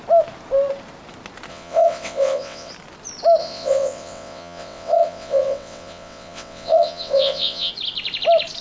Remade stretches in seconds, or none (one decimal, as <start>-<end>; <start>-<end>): 1.5-2.7; 3.4-7.7